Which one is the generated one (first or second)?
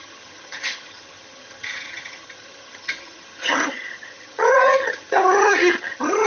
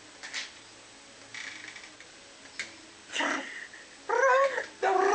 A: first